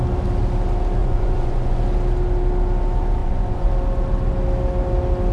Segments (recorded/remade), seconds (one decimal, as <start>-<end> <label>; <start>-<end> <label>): 0.0-1.0 recorded; 1.0-1.8 remade; 1.8-3.2 recorded; 3.2-3.7 remade; 3.7-5.3 recorded